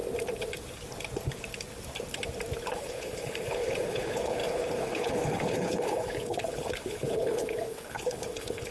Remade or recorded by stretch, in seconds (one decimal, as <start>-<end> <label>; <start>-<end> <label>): 0.0-2.7 recorded; 2.7-8.7 remade